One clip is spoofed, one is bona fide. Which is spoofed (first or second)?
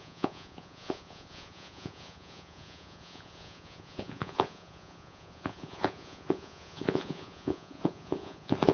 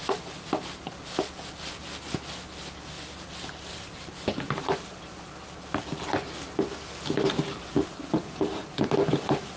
first